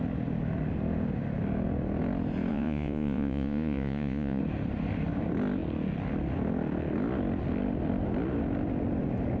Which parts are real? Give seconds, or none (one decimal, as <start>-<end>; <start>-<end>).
0.0-2.5; 4.4-9.4